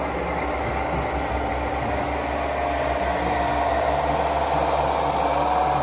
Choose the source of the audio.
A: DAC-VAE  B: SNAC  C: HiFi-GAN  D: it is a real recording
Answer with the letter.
D